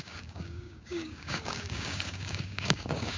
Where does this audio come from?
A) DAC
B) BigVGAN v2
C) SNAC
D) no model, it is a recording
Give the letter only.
A